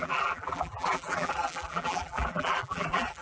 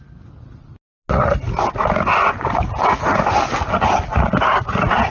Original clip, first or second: second